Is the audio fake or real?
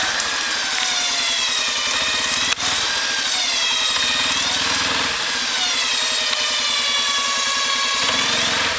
real